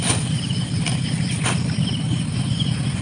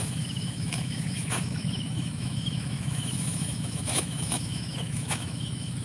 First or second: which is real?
first